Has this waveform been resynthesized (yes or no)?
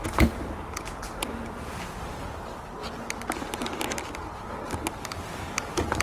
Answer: no